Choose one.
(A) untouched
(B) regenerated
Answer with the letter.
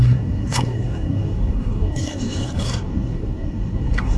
B